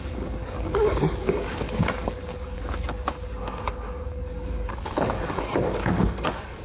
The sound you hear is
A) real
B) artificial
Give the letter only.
B